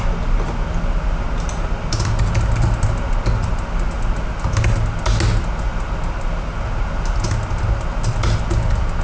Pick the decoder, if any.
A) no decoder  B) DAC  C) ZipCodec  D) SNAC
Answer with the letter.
A